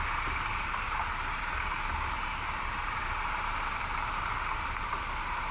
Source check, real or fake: real